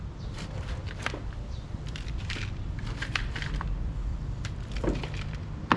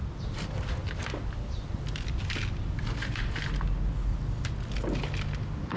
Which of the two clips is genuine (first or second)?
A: second